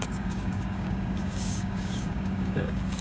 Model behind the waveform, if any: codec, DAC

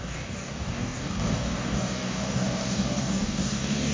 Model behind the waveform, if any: codec, DAC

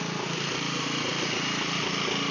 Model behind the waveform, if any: none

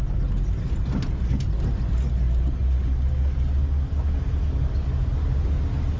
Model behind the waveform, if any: none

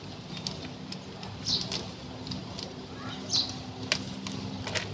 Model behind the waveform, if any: none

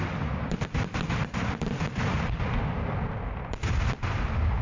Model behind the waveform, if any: none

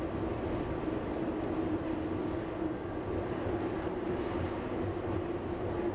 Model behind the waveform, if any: none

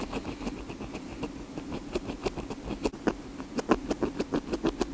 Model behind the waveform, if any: none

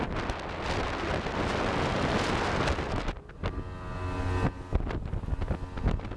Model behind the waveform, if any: none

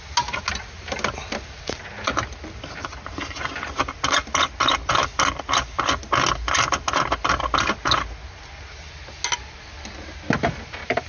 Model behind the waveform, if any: none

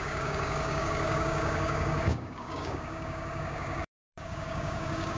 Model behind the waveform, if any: codec, DAC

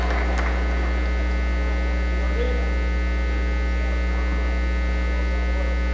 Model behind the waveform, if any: none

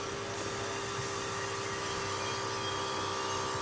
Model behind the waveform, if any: none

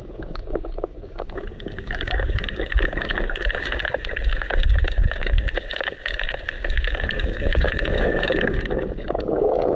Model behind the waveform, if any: codec, DAC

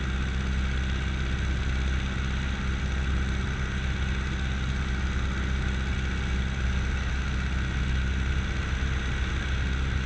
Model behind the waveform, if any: none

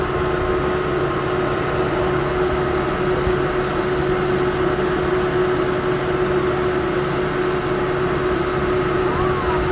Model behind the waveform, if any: none